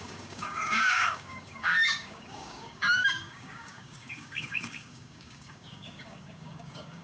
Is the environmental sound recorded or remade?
remade